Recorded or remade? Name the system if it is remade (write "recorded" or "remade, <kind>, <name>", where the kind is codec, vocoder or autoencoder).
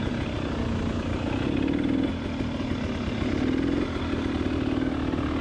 recorded